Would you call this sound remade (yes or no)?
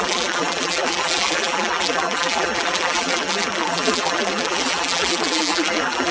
yes